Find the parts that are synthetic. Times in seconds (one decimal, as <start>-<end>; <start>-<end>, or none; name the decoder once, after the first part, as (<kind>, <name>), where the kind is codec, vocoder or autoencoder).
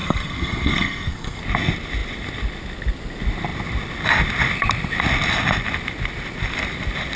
0.0-1.4 (codec, SNAC)